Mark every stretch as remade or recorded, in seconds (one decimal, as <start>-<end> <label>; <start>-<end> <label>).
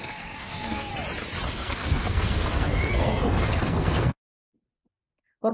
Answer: 0.0-0.9 remade; 0.9-1.5 recorded; 1.5-4.3 remade; 4.3-5.5 recorded